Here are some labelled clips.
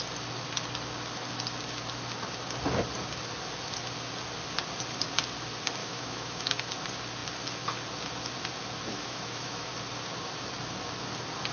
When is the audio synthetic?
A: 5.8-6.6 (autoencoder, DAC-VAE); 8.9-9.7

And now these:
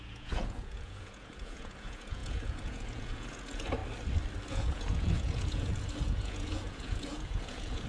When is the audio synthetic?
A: 0.0-3.8 (vocoder, Vocos); 4.5-7.9

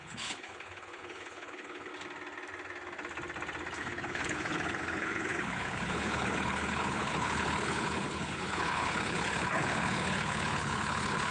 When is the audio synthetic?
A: 0.0-1.9 (codec, HILCodec); 3.8-11.3

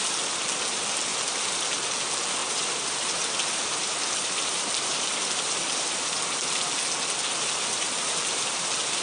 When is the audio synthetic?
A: 1.1-1.6 (vocoder, BigVGAN v2); 2.4-6.6; 7.3-8.6

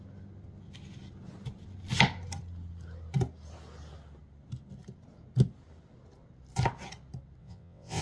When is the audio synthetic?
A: 7.4-8.0 (vocoder, WaveNeXt)